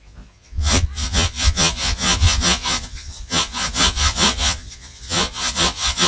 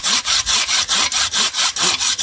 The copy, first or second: first